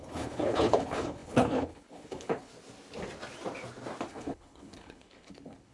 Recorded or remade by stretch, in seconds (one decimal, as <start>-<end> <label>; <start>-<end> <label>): 0.0-2.5 remade; 2.5-4.1 recorded; 4.1-5.7 remade